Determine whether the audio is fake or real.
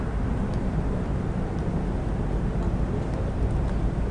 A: real